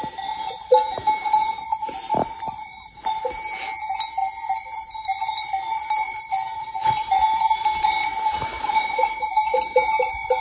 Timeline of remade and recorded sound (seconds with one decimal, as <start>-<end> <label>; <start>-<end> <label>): 0.0-10.4 recorded